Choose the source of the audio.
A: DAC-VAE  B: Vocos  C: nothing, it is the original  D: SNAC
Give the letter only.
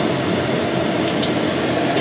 C